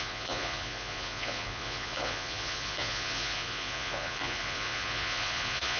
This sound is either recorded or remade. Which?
remade